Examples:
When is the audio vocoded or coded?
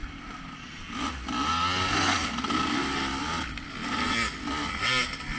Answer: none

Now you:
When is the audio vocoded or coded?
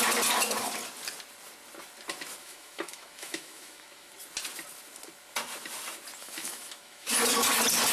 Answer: 2.4-4.1 (autoencoder, DAC-VAE); 6.2-7.1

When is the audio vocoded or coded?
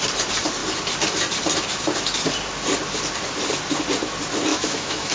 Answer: 4.5-5.1 (autoencoder, DAC-VAE)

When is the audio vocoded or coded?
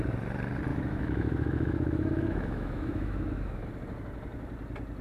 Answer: 0.7-3.7 (autoencoder, DAC-VAE)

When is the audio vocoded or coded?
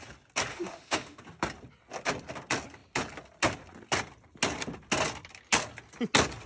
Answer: 0.5-1.2 (autoencoder, DAC-VAE)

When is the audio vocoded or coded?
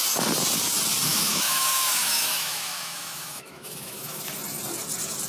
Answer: 1.1-4.3 (autoencoder, DAC-VAE)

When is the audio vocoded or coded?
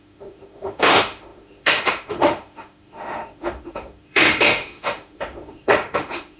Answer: 0.0-6.4 (autoencoder, DAC-VAE)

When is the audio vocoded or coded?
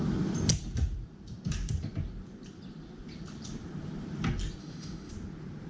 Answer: 4.6-5.1 (autoencoder, DAC-VAE)